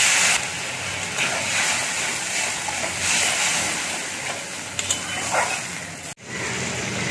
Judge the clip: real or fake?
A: real